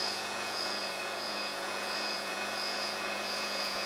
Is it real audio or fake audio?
fake